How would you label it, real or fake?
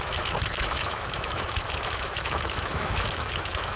fake